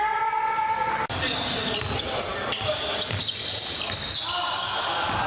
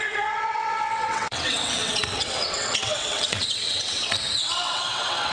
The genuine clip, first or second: first